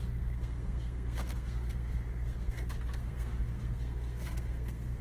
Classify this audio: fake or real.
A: fake